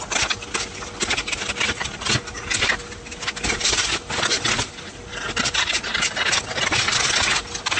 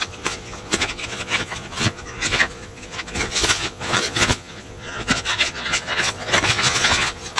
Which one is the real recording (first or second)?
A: first